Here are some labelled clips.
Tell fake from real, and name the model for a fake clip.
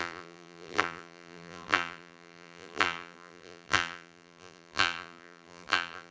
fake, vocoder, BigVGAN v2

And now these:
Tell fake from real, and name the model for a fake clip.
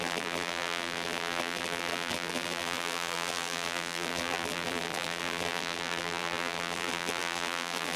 fake, vocoder, BigVGAN v2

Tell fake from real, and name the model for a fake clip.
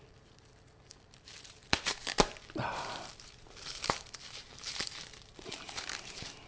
fake, vocoder, BigVGAN v2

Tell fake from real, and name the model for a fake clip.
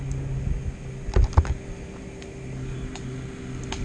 real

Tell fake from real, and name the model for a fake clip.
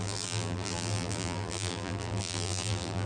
fake, vocoder, BigVGAN v2